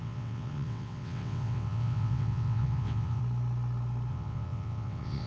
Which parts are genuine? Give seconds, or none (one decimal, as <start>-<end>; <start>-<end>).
3.2-4.1